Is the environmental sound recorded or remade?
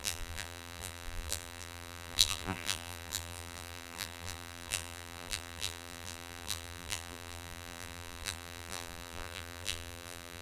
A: remade